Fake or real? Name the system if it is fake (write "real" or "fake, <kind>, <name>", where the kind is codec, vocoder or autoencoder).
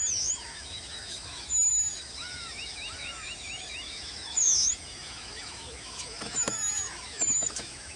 fake, autoencoder, DAC-VAE